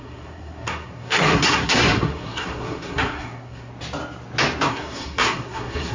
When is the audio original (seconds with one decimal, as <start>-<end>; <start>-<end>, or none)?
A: 3.7-4.7